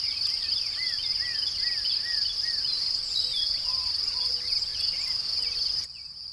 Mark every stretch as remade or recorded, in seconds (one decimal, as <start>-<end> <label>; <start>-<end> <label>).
0.0-1.1 remade; 1.1-2.6 recorded; 2.6-3.7 remade; 3.7-4.3 recorded; 4.3-4.7 remade; 4.7-6.3 recorded